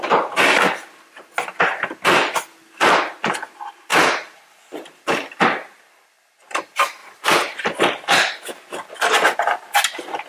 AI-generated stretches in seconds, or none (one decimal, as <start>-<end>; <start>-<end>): none